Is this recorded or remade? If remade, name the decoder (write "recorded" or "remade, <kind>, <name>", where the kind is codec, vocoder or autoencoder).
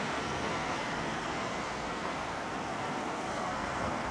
remade, codec, SNAC